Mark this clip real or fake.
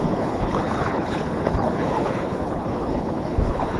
fake